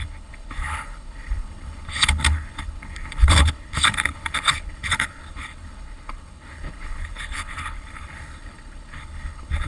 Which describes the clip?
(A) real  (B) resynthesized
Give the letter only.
B